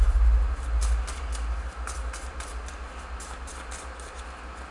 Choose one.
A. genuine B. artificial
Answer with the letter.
A